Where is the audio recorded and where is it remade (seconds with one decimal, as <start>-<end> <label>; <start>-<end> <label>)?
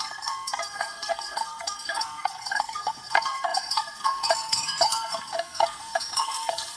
0.0-6.8 remade